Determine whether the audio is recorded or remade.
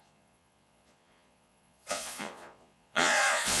remade